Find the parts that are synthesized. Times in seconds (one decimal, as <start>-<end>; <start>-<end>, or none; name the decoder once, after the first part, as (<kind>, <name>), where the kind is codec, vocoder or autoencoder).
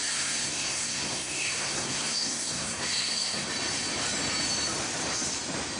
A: 0.0-3.5 (codec, SNAC)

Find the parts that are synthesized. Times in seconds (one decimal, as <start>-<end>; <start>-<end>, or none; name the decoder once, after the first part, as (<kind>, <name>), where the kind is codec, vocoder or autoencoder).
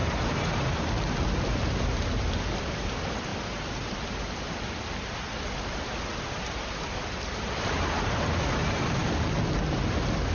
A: none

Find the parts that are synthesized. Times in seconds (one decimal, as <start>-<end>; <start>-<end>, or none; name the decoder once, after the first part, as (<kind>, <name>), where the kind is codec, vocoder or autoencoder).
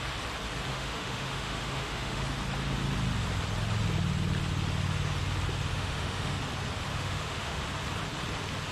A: 0.7-2.2 (autoencoder, DAC-VAE); 5.7-6.4; 6.9-7.6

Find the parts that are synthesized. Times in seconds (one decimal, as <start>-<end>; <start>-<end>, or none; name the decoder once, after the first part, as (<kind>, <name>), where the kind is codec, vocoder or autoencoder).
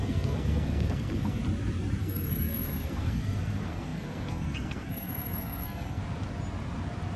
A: 0.0-1.4 (codec, SNAC); 2.0-6.0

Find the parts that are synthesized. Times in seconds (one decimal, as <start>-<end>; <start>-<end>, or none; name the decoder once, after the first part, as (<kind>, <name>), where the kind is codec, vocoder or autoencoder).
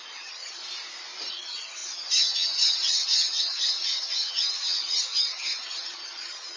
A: 0.0-0.6 (vocoder, HiFi-GAN); 1.3-6.6